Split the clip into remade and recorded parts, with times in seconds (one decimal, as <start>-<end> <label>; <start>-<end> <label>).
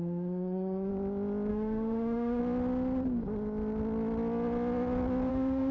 0.0-0.9 remade; 0.9-1.5 recorded; 1.5-2.4 remade; 2.4-5.3 recorded; 5.3-5.7 remade